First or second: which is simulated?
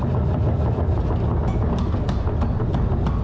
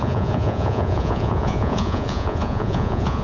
second